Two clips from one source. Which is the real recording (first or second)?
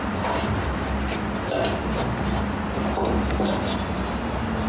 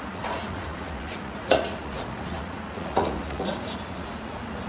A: first